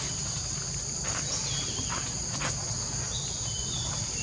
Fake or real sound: real